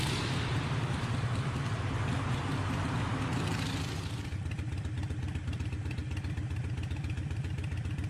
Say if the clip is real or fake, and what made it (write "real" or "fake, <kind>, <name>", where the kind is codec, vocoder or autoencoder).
fake, vocoder, BigVGAN v2